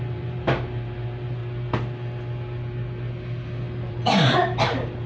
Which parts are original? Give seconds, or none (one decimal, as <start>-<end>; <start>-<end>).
1.4-3.9